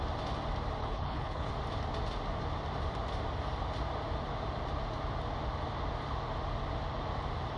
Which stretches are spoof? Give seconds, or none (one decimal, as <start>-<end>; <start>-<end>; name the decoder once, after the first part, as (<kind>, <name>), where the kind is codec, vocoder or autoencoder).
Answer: 0.8-1.5 (codec, HILCodec)